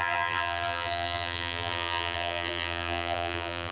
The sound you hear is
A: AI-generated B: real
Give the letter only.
A